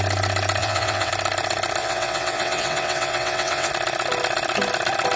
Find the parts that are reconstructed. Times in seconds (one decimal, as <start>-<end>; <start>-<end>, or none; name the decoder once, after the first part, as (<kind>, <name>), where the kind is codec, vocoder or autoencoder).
0.6-1.1 (vocoder, WaveNeXt); 1.8-3.7

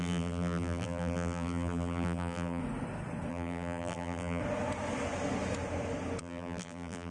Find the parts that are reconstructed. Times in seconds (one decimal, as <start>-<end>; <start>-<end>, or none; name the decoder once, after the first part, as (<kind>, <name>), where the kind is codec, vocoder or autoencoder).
0.0-2.6 (vocoder, BigVGAN v2); 3.3-4.4; 6.2-7.1

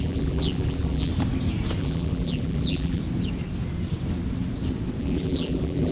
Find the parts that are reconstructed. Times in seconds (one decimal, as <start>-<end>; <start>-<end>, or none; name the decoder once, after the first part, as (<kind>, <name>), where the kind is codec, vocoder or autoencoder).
0.0-1.1 (vocoder, BigVGAN v2); 1.8-3.0; 5.0-5.9

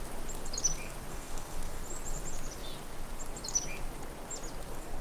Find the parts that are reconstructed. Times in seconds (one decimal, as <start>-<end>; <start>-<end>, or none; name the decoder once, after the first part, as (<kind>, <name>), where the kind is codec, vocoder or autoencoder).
1.1-1.8 (codec, SNAC)

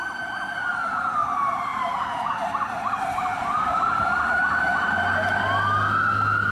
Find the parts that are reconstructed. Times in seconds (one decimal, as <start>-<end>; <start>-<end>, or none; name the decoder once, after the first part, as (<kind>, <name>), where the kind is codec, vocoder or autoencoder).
1.7-2.3 (vocoder, BigVGAN v2); 3.1-4.8

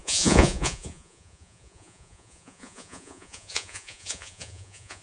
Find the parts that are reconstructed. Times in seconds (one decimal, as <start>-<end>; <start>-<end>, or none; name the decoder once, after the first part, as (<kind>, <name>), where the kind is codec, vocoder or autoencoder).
0.0-5.0 (vocoder, Vocos)

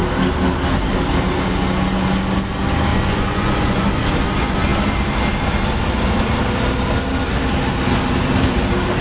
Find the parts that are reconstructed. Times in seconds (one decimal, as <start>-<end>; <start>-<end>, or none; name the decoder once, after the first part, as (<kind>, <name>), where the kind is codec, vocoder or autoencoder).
2.9-3.8 (vocoder, Vocos)

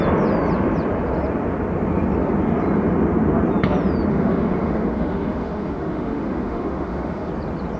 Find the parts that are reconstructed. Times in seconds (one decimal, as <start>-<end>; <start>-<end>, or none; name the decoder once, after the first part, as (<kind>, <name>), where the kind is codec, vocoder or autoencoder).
4.1-7.3 (autoencoder, DAC-VAE)